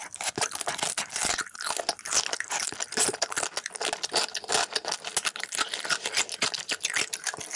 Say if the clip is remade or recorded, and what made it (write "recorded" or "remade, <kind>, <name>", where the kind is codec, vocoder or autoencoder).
recorded